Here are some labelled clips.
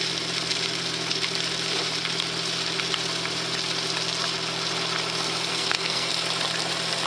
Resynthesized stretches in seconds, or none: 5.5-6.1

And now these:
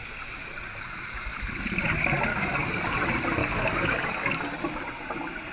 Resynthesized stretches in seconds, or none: 2.3-2.8; 3.4-4.4

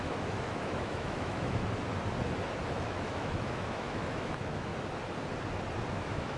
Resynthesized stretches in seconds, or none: 0.0-1.6; 2.8-4.7; 5.9-6.4

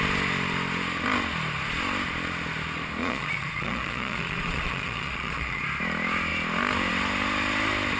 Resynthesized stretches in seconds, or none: 3.0-5.6

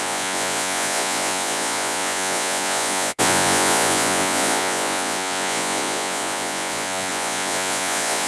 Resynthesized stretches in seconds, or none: 0.0-8.3

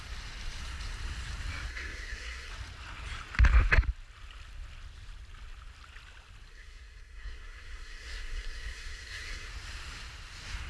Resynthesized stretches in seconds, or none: 1.7-2.5; 6.5-9.5